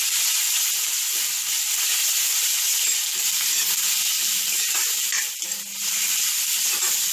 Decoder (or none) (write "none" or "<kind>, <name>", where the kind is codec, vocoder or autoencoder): none